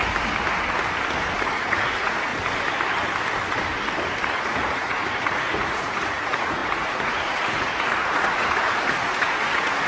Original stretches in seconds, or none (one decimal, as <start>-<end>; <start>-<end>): 0.0-1.5; 2.3-4.4